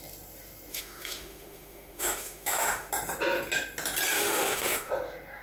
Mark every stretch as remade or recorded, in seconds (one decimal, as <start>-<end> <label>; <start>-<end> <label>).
0.0-0.7 recorded; 0.7-2.9 remade; 2.9-4.1 recorded; 4.1-4.9 remade; 4.9-5.4 recorded